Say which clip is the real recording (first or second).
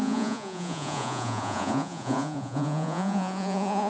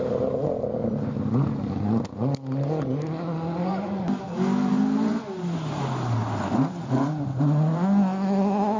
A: second